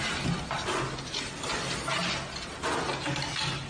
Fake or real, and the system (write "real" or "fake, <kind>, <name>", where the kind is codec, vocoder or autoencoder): real